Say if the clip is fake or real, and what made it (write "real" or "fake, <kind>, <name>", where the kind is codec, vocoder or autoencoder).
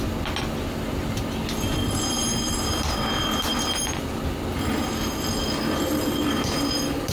real